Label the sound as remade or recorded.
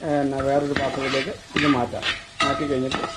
recorded